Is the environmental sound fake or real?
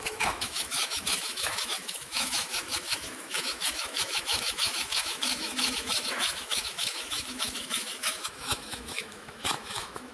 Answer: fake